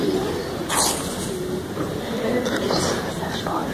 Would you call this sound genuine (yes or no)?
yes